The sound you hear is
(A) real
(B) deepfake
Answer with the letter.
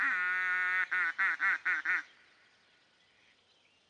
A